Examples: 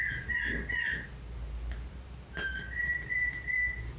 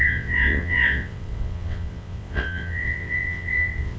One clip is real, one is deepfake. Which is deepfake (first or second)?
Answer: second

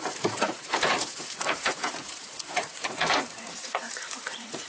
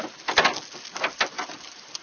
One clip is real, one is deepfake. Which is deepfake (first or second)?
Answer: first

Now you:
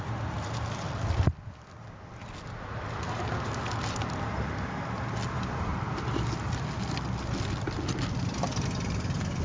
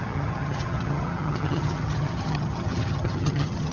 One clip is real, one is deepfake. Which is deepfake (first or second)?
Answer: second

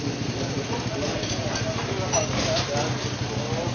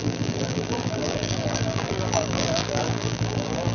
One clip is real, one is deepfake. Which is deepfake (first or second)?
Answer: second